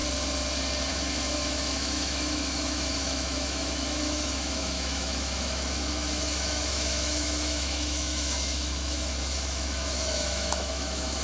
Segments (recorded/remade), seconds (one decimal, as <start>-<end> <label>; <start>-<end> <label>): 0.0-0.9 recorded; 0.9-11.2 remade